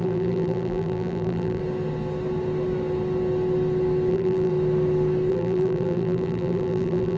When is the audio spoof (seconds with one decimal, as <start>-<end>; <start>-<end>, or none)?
0.0-1.6; 4.1-4.5; 5.3-7.2